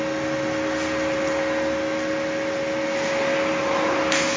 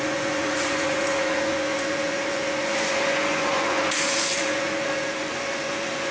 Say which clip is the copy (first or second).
second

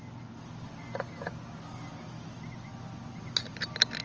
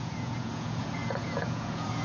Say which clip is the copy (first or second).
second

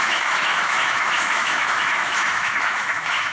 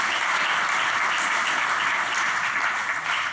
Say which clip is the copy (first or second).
first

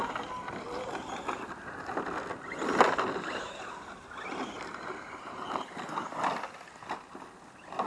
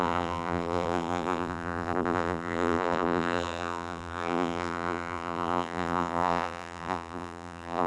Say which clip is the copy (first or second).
second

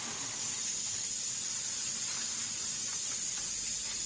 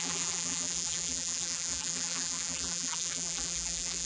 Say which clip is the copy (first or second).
second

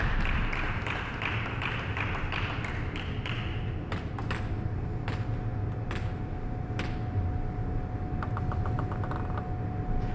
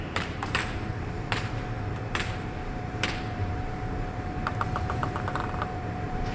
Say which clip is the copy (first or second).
second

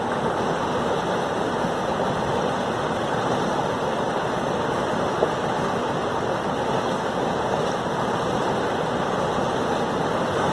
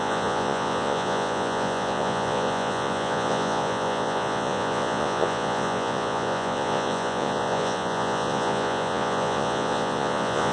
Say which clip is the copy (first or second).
second